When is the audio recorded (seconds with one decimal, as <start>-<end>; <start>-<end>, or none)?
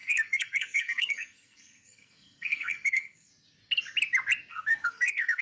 3.3-4.5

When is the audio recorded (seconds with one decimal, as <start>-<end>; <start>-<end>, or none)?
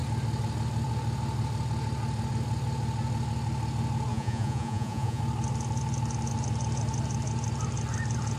0.0-4.1; 5.2-8.4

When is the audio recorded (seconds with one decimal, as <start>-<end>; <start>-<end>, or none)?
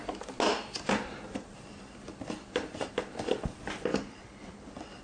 0.0-5.0